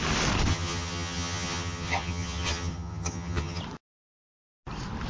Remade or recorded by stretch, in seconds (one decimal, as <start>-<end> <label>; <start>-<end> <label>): 0.0-0.5 recorded; 0.5-3.6 remade; 3.6-5.1 recorded